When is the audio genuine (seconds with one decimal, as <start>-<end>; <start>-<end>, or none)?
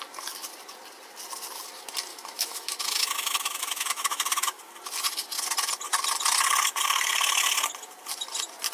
0.0-2.1; 4.6-8.7